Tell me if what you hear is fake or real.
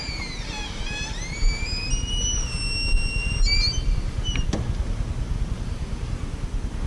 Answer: real